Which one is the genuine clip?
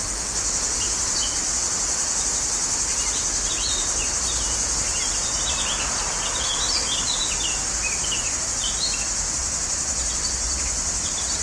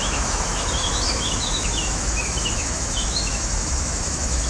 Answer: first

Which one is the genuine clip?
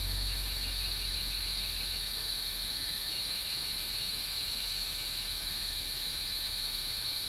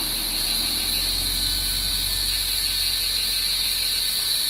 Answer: second